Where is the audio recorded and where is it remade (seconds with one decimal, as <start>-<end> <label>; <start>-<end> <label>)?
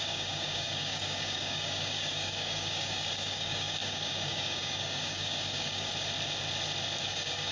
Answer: 0.0-5.9 remade; 5.9-7.0 recorded; 7.0-7.5 remade